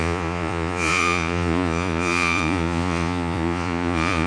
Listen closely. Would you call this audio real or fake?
fake